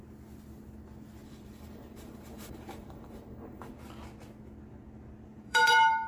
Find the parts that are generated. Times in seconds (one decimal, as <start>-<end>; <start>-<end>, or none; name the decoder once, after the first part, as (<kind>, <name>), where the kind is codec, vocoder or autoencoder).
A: 1.2-3.8 (vocoder, BigVGAN v2); 5.3-6.1